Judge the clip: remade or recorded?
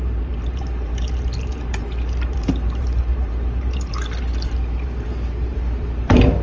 remade